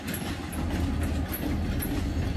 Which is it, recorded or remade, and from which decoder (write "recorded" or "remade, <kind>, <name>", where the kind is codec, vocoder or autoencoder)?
recorded